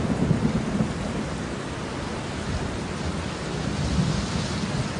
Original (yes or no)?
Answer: yes